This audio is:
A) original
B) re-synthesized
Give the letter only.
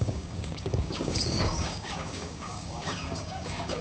B